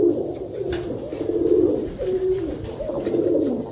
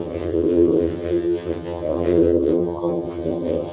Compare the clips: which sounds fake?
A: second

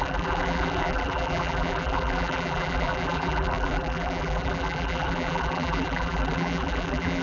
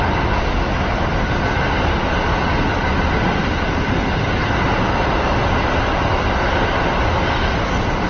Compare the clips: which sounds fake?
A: first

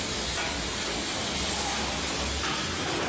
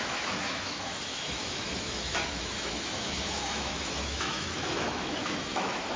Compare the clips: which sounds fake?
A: second